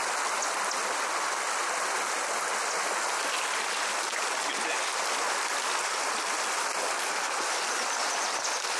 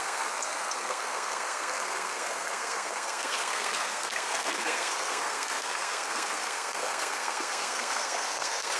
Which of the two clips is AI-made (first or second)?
second